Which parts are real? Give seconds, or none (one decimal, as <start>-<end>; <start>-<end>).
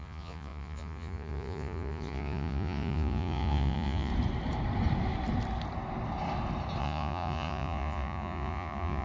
4.1-6.8